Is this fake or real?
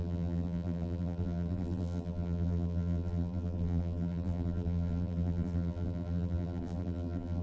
fake